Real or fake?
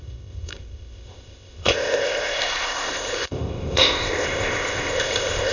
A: fake